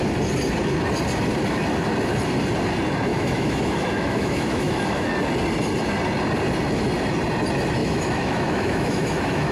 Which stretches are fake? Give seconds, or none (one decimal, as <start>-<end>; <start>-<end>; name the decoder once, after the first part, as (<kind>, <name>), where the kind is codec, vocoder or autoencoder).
3.1-5.1 (autoencoder, DAC-VAE); 7.8-9.5